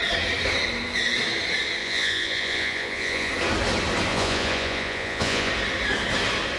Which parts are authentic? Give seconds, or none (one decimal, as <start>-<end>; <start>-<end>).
0.0-1.8; 3.3-4.1; 5.5-6.6

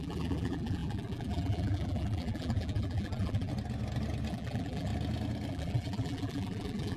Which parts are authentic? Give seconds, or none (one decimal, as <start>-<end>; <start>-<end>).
3.5-4.3; 4.9-5.5

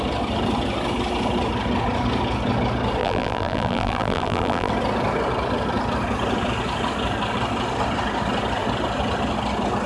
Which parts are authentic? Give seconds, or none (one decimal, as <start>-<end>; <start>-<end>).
0.0-3.0; 4.7-9.9

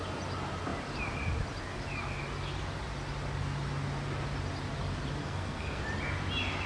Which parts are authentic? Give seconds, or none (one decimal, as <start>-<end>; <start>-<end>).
0.0-5.2; 5.8-6.7

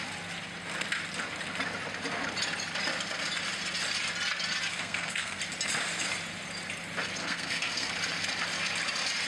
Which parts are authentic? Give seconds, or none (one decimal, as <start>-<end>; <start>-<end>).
0.0-4.7; 5.4-7.2; 7.9-9.3

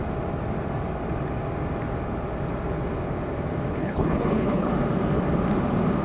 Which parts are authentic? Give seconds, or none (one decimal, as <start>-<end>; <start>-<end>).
0.0-3.7; 4.7-6.0